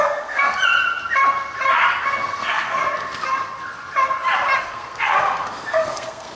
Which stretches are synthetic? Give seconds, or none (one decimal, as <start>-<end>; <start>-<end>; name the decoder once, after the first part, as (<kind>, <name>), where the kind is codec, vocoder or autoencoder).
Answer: 0.0-0.6 (codec, SNAC); 2.0-2.8; 4.6-6.4